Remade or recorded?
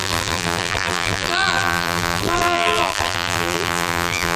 remade